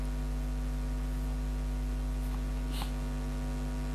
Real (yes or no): yes